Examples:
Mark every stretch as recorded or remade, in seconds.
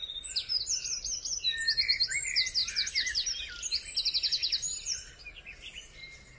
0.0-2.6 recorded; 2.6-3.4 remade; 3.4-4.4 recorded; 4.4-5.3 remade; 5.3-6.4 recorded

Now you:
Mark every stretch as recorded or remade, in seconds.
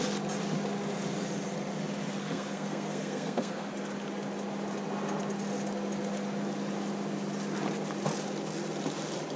0.0-2.2 recorded; 2.2-3.7 remade; 3.7-9.4 recorded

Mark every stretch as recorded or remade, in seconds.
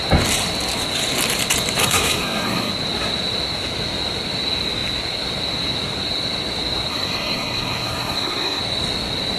0.0-1.8 recorded; 1.8-2.7 remade; 2.7-6.9 recorded; 6.9-8.6 remade; 8.6-9.4 recorded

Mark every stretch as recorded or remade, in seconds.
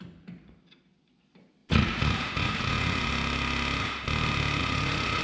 0.0-1.6 recorded; 1.6-3.1 remade; 3.1-4.6 recorded; 4.6-5.2 remade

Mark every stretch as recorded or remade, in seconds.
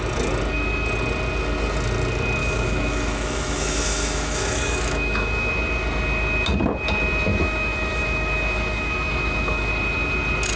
0.0-2.4 recorded; 2.4-5.5 remade; 5.5-7.3 recorded; 7.3-9.7 remade; 9.7-10.6 recorded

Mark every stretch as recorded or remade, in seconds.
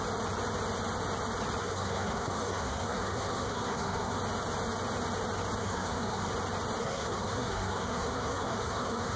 0.0-1.6 recorded; 1.6-4.2 remade; 4.2-5.6 recorded; 5.6-6.3 remade; 6.3-6.8 recorded; 6.8-9.2 remade